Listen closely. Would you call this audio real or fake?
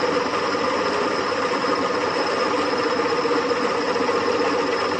fake